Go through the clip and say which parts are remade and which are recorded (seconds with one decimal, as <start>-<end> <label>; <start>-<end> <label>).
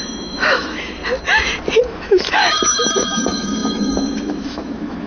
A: 0.0-1.0 remade; 1.0-1.8 recorded; 1.8-5.1 remade